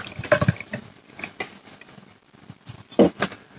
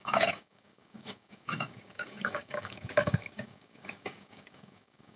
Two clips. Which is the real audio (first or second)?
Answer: first